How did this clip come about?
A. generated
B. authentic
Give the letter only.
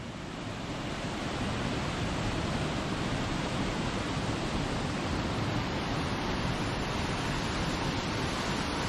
B